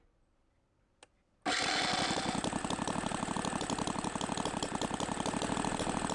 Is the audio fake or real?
real